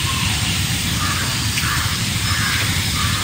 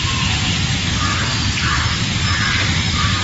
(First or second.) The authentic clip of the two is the second